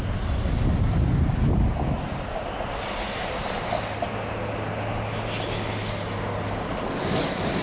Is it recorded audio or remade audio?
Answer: recorded